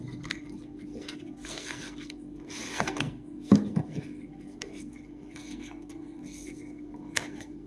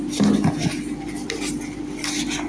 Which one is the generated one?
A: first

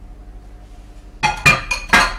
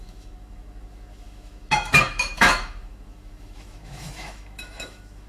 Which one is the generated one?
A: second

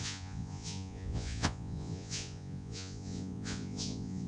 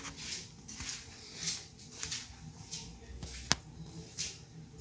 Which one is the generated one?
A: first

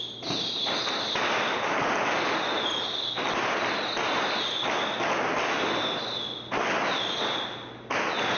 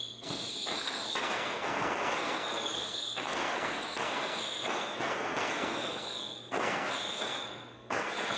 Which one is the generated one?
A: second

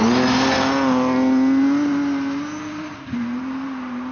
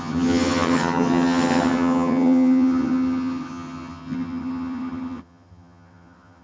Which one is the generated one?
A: second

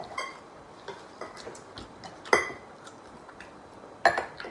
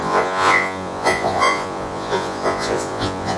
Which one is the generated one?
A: second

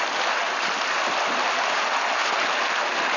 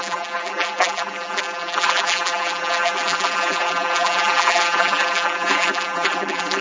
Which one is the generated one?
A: second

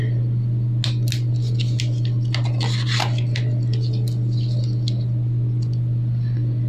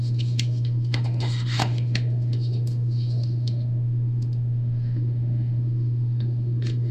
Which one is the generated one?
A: second